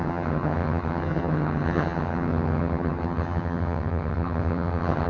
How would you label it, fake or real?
fake